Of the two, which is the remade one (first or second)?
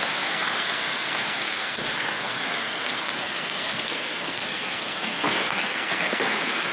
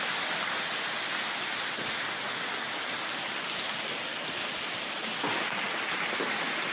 first